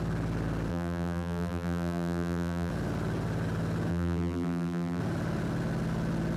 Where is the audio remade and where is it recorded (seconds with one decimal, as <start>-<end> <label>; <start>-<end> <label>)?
0.0-0.7 recorded; 0.7-2.7 remade; 2.7-3.9 recorded; 3.9-5.0 remade; 5.0-6.4 recorded